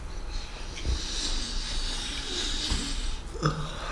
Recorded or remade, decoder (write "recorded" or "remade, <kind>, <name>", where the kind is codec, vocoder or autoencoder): recorded